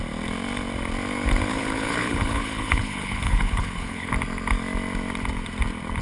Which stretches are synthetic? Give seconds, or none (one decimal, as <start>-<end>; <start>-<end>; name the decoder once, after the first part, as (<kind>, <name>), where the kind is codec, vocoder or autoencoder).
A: 1.5-4.1 (codec, HILCodec)